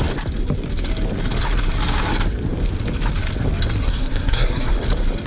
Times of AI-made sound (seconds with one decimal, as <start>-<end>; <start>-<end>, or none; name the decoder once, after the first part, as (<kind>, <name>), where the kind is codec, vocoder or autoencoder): 3.8-4.7 (codec, SNAC)

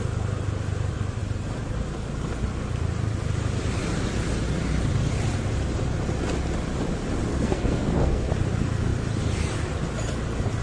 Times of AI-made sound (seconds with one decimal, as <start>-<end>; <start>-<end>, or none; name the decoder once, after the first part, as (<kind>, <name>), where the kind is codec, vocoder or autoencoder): 7.3-8.3 (codec, SNAC)

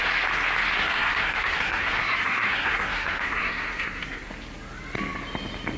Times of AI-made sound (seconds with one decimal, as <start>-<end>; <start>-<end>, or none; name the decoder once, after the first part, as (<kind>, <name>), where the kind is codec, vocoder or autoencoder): 0.8-4.3 (codec, SNAC)

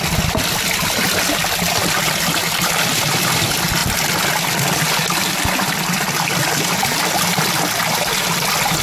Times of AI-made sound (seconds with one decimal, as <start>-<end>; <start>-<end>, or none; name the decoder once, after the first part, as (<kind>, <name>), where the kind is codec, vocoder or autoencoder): none

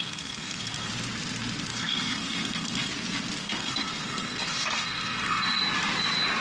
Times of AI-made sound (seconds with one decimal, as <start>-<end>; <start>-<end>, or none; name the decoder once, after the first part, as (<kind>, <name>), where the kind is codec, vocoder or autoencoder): 0.0-0.9 (codec, SNAC); 1.7-2.9; 3.4-5.6

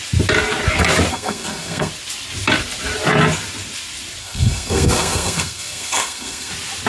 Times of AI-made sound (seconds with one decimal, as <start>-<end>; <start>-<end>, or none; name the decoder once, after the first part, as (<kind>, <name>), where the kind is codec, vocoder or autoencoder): 1.1-1.9 (codec, SNAC); 4.2-6.5